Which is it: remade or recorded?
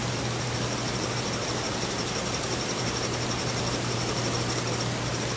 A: recorded